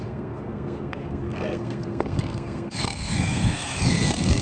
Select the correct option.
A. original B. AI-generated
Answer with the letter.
B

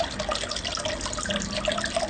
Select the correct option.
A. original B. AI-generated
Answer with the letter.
A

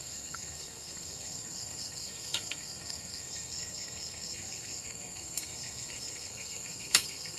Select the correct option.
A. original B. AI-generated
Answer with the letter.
B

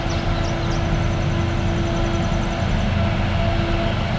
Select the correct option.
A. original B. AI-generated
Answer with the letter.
A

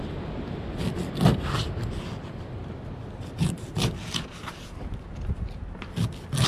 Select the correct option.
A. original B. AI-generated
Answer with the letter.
A